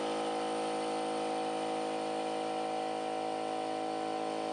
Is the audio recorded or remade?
recorded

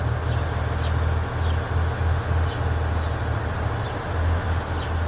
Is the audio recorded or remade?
recorded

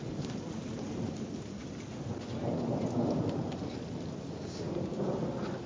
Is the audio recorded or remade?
recorded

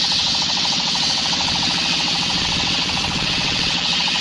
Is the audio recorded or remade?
remade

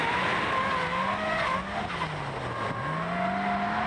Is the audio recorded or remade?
recorded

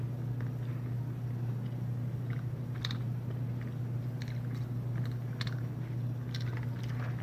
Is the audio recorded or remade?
recorded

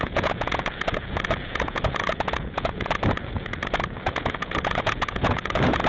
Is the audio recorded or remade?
remade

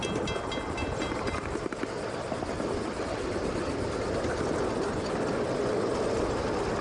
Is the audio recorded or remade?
recorded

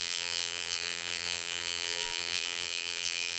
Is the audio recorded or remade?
remade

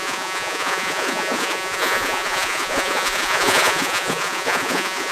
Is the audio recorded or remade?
remade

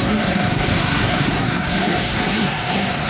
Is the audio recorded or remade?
remade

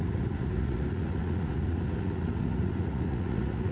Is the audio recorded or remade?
remade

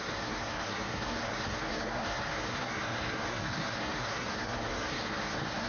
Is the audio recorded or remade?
remade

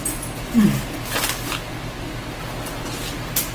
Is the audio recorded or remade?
recorded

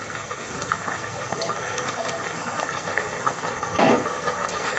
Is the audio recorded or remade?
remade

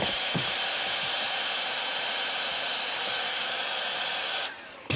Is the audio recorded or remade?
remade